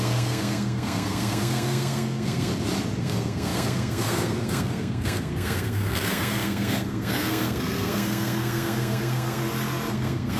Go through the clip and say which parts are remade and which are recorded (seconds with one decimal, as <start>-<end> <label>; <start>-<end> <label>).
0.0-2.5 remade; 2.5-3.0 recorded; 3.0-9.4 remade; 9.4-9.9 recorded; 9.9-10.4 remade